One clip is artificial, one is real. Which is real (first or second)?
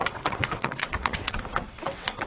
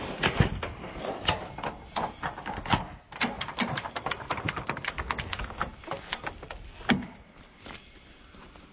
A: second